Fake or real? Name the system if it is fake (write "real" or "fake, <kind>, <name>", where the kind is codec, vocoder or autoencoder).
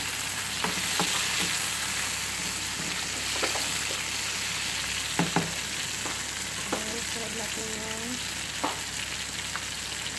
real